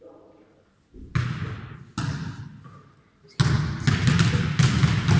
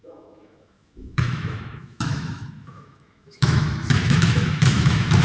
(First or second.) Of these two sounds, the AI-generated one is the second